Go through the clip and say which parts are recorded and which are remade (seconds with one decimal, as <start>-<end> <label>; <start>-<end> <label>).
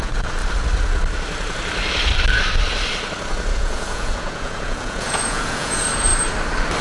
0.0-0.4 remade; 0.4-3.5 recorded; 3.5-6.1 remade; 6.1-6.8 recorded